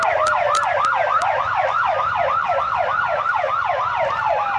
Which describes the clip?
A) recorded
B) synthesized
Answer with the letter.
A